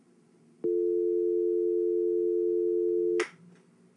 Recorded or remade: recorded